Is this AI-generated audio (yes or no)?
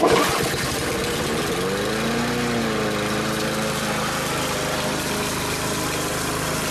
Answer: no